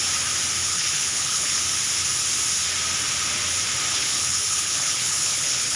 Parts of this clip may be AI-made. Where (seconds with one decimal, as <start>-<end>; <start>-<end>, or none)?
0.6-1.6; 3.9-5.8